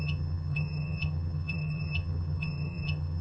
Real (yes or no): no